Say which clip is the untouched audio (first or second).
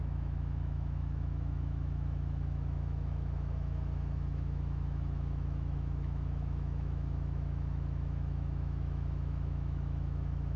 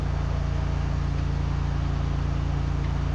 second